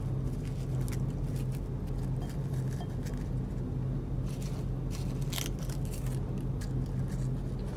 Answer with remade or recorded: recorded